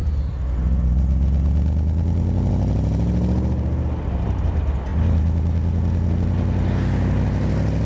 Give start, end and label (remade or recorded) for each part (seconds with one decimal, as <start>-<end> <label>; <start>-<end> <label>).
0.0-7.8 recorded